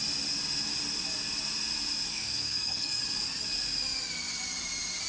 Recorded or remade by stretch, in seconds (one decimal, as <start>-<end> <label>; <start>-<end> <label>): 0.0-2.1 recorded; 2.1-3.0 remade; 3.0-5.1 recorded